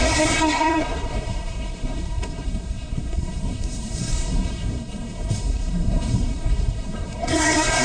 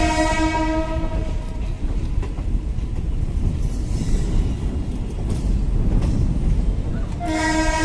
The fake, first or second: first